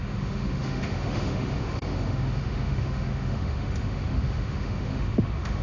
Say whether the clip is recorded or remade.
remade